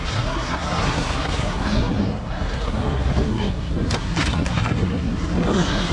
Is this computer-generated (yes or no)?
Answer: yes